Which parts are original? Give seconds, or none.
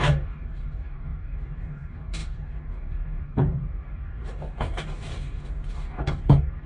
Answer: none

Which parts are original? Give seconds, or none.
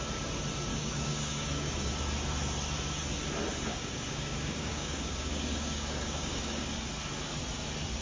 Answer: 0.0-0.7; 1.9-3.7; 6.7-8.0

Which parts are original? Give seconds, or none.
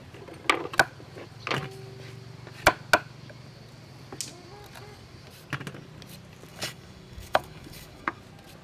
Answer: 0.0-6.5; 8.2-8.6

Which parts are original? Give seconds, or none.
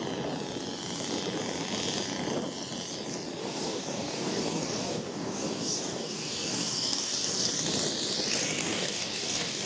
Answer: 0.0-3.4; 7.5-8.6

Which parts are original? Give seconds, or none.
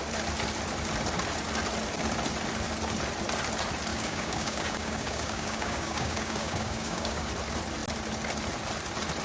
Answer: 0.0-3.9; 7.3-9.2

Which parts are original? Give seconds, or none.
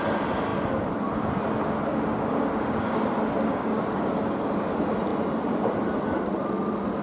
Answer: 0.0-1.9; 3.0-3.5; 4.1-7.0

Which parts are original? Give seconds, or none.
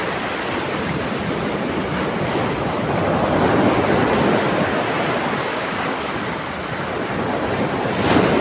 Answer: 0.0-5.5; 6.1-8.4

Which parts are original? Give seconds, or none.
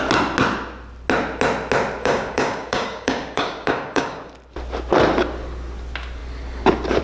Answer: 0.0-2.0; 4.3-7.0